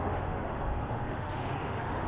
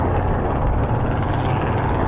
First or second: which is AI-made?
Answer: first